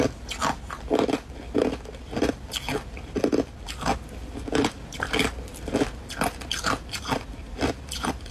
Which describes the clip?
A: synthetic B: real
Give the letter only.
B